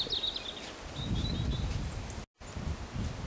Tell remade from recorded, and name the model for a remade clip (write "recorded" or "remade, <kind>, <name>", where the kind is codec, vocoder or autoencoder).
recorded